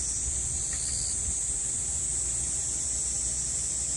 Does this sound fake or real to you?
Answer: real